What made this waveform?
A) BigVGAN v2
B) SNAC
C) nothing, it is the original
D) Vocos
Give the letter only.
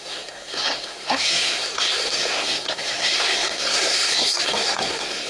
B